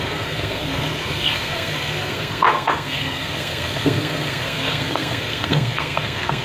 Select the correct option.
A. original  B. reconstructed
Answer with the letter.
B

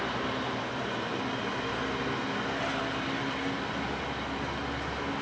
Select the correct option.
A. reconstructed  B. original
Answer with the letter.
B